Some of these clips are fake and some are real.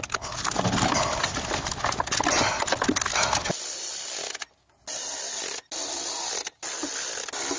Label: real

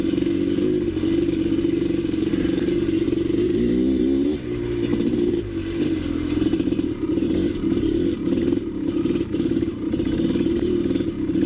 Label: real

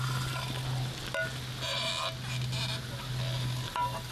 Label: real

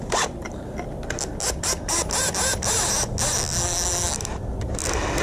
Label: real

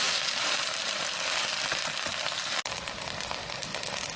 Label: real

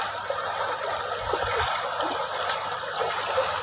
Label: real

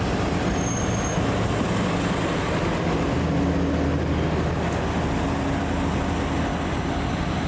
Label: real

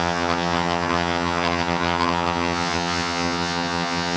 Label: fake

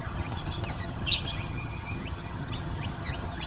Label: fake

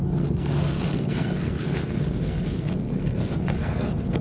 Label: fake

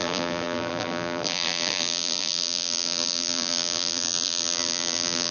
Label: fake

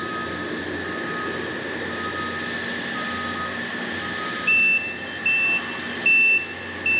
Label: real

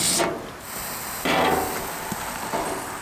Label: real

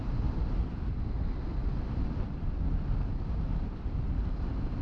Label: real